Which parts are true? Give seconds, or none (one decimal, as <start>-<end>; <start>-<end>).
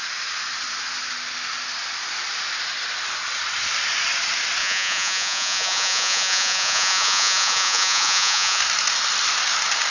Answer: 0.0-4.6; 8.6-9.9